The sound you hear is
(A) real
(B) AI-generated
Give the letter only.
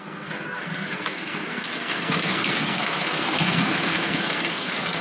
B